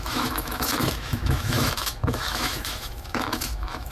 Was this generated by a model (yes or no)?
yes